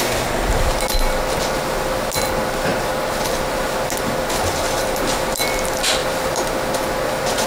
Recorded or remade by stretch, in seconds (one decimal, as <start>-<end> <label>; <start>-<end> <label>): 0.0-2.7 recorded; 2.7-3.4 remade; 3.4-6.0 recorded; 6.0-6.8 remade; 6.8-7.5 recorded